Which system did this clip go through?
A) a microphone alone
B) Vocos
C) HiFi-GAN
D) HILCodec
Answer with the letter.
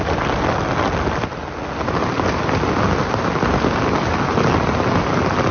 A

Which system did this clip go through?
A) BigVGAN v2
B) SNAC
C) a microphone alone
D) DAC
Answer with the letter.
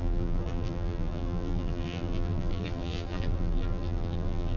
A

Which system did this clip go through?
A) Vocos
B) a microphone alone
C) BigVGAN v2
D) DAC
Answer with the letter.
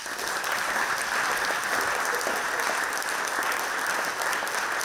B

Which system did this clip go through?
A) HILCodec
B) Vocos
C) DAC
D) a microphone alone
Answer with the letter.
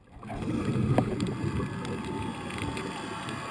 D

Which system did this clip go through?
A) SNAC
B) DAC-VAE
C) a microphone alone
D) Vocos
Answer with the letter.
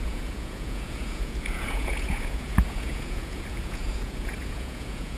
D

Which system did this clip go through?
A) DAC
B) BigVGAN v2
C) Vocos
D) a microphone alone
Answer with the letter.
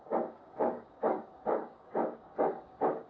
A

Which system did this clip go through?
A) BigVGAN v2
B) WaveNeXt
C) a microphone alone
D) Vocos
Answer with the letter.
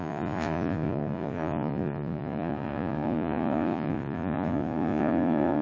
D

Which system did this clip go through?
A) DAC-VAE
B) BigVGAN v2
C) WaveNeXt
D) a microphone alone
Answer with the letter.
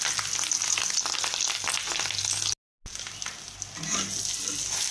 D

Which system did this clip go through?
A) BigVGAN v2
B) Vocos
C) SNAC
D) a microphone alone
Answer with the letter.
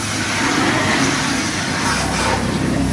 D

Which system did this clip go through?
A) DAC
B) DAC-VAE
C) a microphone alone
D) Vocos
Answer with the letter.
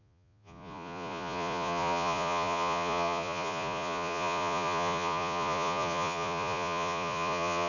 D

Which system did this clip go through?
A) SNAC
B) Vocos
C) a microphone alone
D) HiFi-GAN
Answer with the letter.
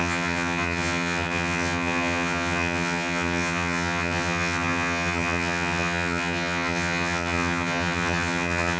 D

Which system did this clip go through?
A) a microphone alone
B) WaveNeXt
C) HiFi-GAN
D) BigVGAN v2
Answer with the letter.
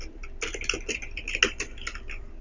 A